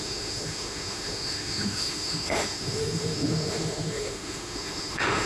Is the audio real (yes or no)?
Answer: no